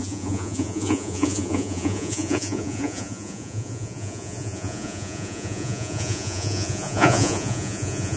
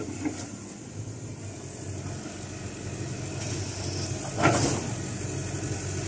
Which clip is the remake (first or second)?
first